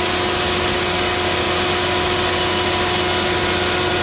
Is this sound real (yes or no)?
yes